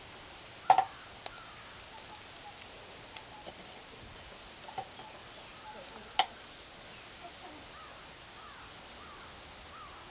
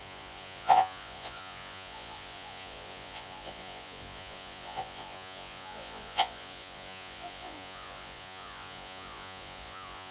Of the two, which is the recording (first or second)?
first